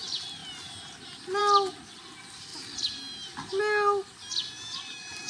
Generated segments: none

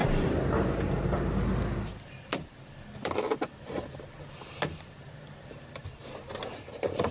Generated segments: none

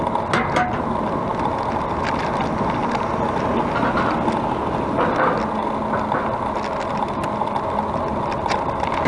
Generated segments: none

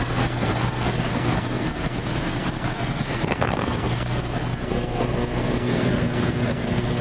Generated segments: 0.0-7.0 (codec, SNAC)

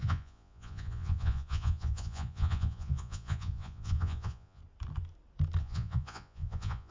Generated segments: 0.0-4.6 (vocoder, Vocos); 5.6-6.9

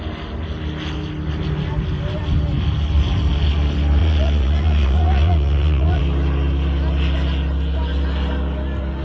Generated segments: 4.0-6.0 (vocoder, Vocos)

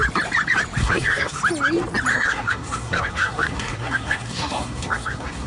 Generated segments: 0.8-1.4 (codec, SNAC); 2.1-5.5

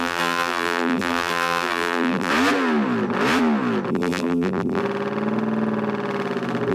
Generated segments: 0.0-2.3 (vocoder, BigVGAN v2); 3.9-4.8